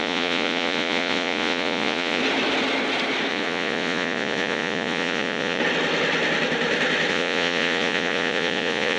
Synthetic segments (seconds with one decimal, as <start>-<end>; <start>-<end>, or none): 0.0-2.2; 3.3-5.6; 7.1-9.0